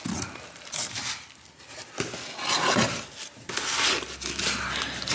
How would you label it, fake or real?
real